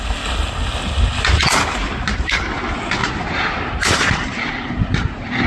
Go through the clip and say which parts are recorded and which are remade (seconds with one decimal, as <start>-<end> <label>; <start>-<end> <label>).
0.0-3.0 recorded; 3.0-5.5 remade